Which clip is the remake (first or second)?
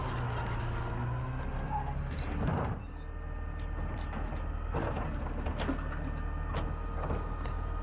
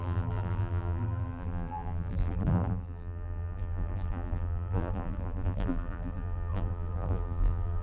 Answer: second